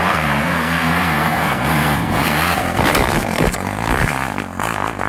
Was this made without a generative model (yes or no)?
no